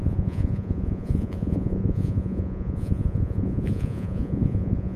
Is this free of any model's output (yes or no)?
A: no